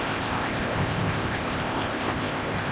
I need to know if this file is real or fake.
fake